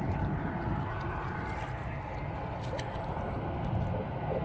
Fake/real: real